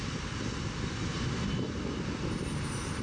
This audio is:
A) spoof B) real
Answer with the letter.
B